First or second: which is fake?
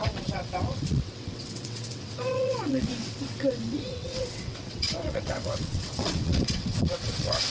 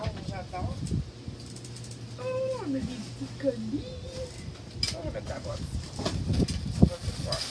first